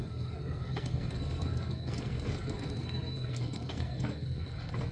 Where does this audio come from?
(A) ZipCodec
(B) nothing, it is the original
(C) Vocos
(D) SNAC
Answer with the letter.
D